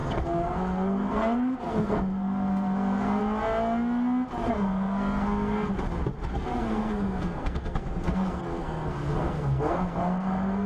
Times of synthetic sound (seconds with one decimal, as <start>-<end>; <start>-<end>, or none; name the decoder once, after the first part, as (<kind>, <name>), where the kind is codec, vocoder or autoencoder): 0.0-3.2 (codec, SNAC); 4.5-5.7; 6.3-10.7